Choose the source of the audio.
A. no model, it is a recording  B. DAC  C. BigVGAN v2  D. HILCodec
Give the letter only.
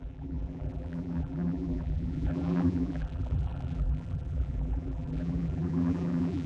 C